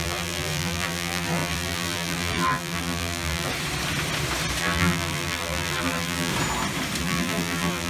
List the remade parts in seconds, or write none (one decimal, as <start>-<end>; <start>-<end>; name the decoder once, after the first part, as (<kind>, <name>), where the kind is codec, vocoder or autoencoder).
0.0-3.5 (vocoder, BigVGAN v2); 4.6-6.3; 7.0-7.9